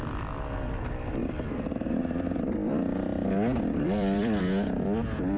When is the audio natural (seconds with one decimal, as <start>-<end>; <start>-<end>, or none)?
0.0-1.2; 4.4-5.4